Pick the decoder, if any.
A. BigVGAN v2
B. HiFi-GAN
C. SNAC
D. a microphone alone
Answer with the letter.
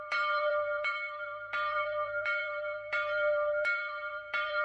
A